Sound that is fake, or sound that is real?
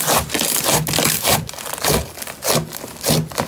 real